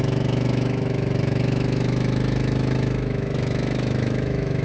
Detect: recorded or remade remade